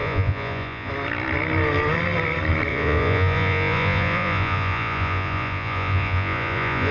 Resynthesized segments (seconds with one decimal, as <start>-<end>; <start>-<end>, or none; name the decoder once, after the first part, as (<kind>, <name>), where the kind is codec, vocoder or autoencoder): 0.0-0.9 (vocoder, Vocos); 2.7-6.9